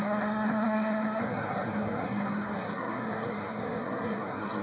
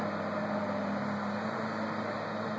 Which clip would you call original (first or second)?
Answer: second